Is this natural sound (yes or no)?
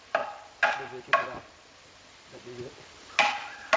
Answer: yes